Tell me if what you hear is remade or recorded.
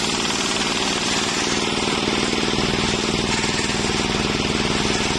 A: recorded